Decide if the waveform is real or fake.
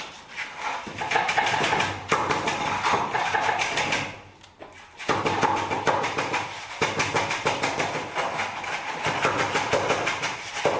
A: fake